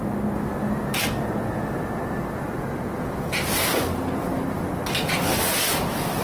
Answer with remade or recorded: recorded